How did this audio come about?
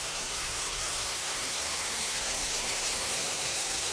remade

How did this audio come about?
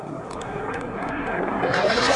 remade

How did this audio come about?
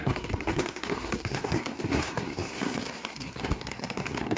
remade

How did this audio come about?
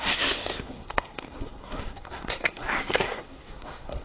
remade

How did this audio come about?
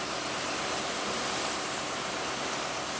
recorded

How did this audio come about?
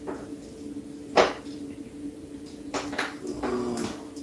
recorded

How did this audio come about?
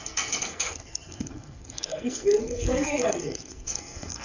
remade